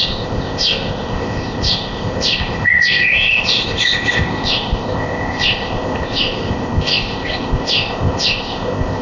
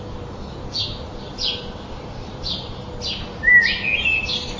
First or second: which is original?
second